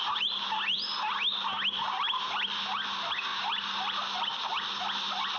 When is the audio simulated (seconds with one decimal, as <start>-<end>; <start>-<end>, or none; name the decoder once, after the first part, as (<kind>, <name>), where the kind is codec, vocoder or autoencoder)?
none

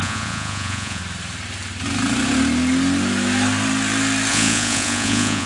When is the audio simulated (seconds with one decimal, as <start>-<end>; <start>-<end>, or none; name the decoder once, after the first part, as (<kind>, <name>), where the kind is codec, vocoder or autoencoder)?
0.0-1.0 (vocoder, Vocos); 4.3-5.5

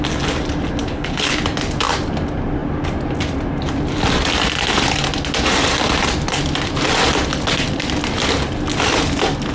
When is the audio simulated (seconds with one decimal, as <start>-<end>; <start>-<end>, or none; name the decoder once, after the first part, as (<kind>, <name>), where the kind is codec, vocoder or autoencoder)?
0.8-1.4 (codec, HILCodec)

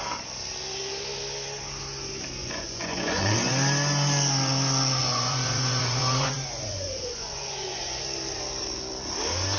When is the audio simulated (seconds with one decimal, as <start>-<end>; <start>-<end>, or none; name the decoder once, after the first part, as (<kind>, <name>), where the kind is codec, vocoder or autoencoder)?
2.4-3.5 (vocoder, Vocos); 5.0-8.0